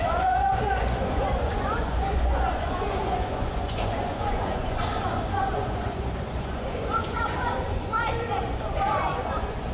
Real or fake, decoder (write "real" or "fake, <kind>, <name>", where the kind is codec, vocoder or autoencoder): fake, vocoder, Vocos